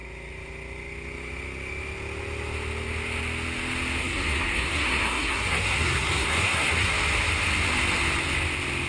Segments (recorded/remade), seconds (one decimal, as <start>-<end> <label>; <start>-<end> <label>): 0.0-4.0 recorded; 4.0-6.9 remade; 6.9-8.9 recorded